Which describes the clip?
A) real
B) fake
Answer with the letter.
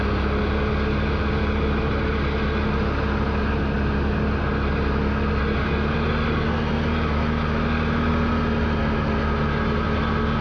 A